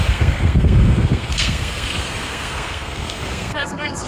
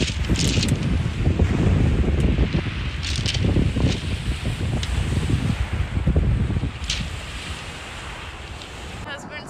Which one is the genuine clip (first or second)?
second